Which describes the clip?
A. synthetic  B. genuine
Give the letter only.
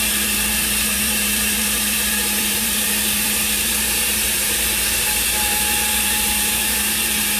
A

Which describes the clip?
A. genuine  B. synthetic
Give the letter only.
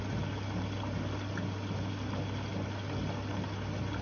A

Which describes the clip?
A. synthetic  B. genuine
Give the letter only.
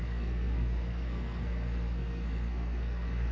A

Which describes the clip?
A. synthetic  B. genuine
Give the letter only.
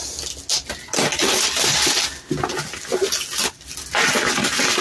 B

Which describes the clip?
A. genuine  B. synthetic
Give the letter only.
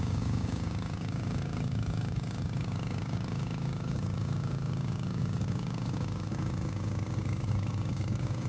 B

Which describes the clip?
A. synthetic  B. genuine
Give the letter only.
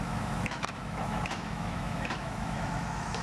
A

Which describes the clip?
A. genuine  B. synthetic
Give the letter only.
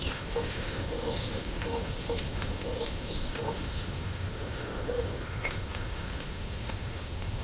B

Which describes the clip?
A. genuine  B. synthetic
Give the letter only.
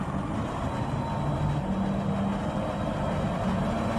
A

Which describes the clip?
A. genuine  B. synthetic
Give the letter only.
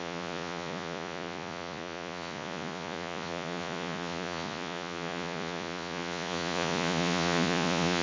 B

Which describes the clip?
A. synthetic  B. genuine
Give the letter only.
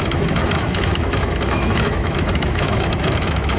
A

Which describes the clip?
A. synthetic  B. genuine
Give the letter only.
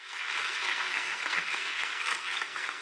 A